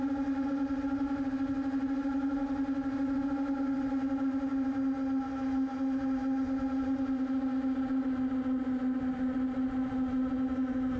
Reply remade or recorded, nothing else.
recorded